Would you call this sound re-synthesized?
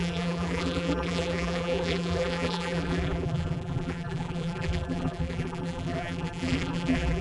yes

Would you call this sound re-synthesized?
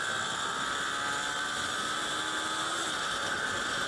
no